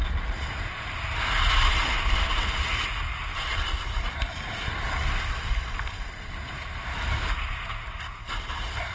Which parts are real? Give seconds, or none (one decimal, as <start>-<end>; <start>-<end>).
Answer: 1.3-3.3; 6.3-8.9